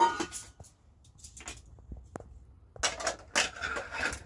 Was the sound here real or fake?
real